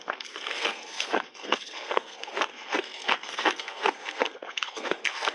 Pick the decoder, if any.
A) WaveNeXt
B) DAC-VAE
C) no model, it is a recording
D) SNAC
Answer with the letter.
D